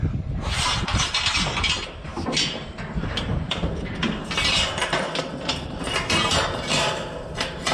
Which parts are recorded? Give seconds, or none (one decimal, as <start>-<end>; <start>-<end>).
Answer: 0.0-7.7